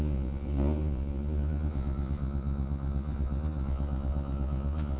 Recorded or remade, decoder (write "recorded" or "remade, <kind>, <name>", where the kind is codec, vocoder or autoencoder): remade, vocoder, Vocos